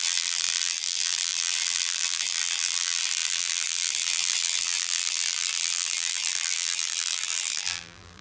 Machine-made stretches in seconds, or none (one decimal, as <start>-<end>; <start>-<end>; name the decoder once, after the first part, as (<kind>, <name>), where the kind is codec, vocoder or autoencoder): 0.0-8.2 (vocoder, BigVGAN v2)